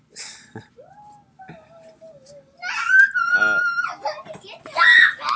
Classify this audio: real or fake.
real